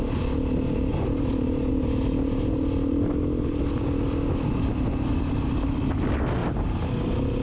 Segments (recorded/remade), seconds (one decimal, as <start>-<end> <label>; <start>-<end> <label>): 0.0-0.9 recorded; 0.9-1.7 remade; 1.7-6.4 recorded; 6.4-6.9 remade; 6.9-7.4 recorded